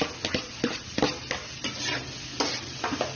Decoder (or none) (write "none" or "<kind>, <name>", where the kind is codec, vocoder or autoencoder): none